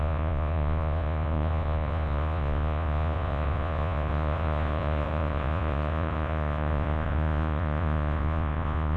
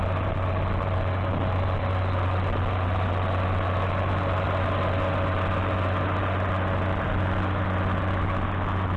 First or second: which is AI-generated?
first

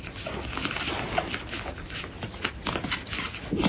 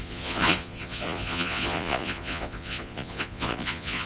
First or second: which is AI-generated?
second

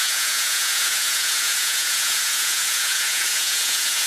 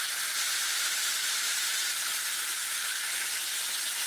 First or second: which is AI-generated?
first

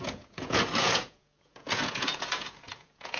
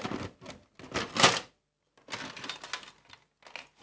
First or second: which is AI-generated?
first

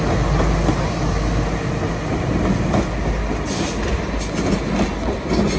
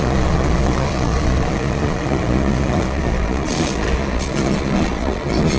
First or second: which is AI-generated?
second